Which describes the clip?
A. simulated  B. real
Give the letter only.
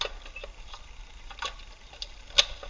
B